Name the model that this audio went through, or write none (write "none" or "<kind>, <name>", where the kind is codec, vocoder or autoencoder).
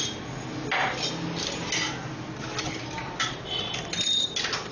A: none